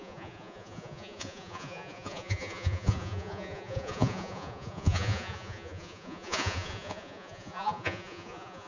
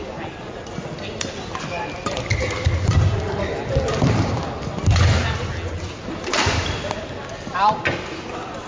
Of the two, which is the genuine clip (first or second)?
second